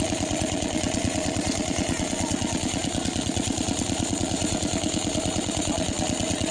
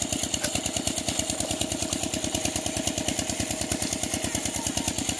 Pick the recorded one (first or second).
second